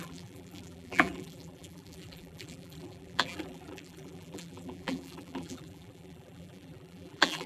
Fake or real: fake